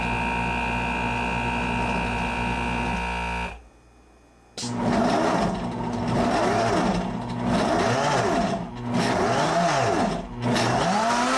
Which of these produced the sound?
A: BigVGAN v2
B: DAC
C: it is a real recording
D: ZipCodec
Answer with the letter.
C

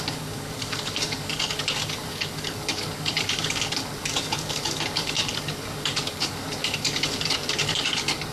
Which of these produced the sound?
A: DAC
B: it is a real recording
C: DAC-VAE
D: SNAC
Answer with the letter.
A